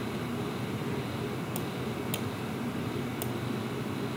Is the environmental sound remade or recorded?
recorded